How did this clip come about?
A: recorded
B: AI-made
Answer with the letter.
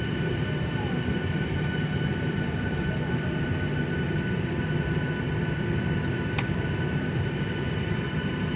B